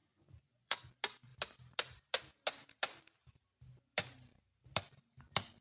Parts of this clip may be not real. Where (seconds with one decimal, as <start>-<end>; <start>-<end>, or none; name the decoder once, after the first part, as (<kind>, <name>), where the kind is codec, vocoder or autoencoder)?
0.0-0.9 (vocoder, Vocos)